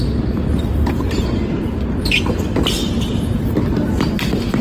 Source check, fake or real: real